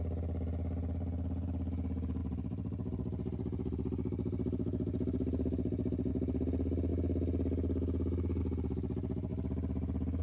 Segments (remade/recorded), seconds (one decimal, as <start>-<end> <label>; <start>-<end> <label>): 0.0-10.2 recorded